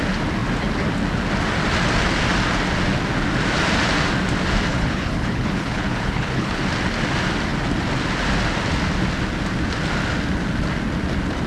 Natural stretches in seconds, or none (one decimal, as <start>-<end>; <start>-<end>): 0.0-4.7; 6.6-11.5